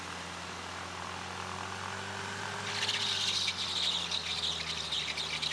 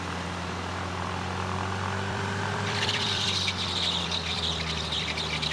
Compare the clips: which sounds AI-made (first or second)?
second